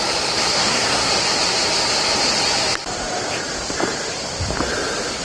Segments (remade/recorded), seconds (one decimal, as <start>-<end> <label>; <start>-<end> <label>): 0.0-0.6 recorded; 0.6-1.1 remade; 1.1-5.2 recorded